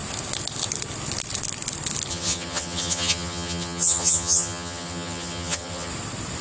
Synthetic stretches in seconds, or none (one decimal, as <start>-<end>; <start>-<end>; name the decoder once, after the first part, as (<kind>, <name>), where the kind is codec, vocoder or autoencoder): 2.1-5.9 (vocoder, HiFi-GAN)